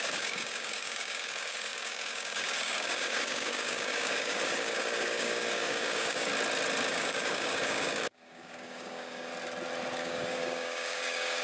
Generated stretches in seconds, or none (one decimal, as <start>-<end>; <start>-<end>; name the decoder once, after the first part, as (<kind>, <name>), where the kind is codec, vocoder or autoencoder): 0.0-6.3 (codec, DAC); 6.9-9.3; 10.0-11.4

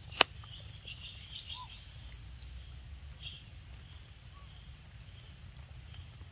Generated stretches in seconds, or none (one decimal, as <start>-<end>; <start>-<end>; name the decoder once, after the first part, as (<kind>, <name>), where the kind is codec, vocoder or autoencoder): none

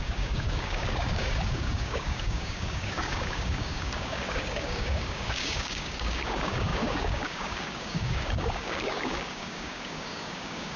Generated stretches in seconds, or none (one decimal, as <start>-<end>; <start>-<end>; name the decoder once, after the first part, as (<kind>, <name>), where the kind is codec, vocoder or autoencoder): 0.0-10.8 (codec, DAC)